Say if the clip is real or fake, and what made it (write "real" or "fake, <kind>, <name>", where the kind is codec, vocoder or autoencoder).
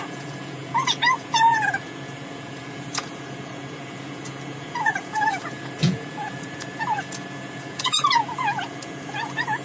fake, vocoder, Vocos